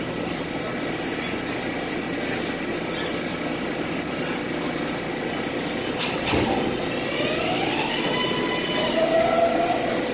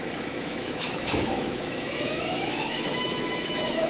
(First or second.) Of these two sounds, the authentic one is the first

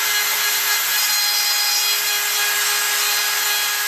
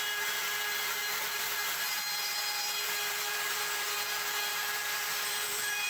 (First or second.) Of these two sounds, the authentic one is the first